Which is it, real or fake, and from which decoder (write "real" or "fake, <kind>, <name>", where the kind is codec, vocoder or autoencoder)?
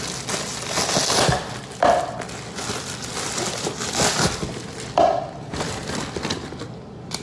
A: real